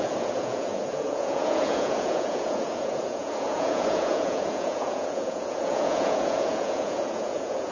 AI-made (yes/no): yes